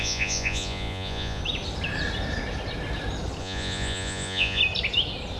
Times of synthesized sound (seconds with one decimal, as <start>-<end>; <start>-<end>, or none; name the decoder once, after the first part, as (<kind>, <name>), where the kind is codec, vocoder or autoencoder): 0.0-1.4 (vocoder, Vocos); 3.4-4.6